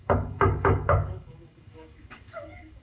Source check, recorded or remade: remade